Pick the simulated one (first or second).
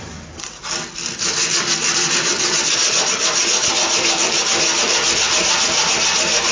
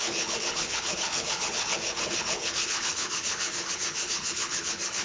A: second